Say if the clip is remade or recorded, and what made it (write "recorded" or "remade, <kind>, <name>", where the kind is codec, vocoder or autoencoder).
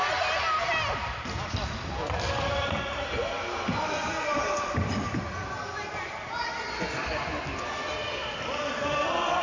recorded